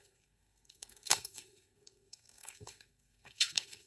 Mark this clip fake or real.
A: fake